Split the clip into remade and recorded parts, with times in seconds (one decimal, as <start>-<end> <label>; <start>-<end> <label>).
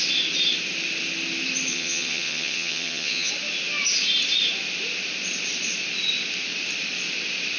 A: 0.0-1.7 recorded; 1.7-3.3 remade; 3.3-7.6 recorded